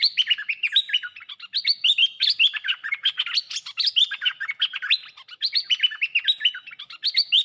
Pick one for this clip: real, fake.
real